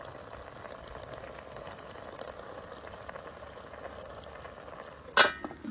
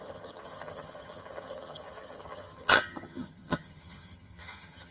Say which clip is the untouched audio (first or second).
first